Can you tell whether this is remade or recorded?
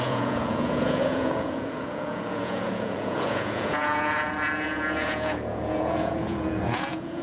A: remade